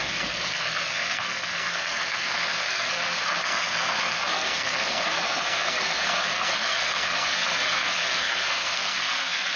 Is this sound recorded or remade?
remade